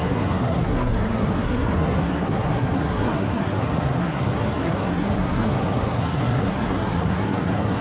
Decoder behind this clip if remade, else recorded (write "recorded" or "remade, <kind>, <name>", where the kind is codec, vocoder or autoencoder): remade, codec, SNAC